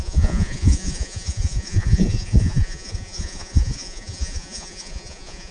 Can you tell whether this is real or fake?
fake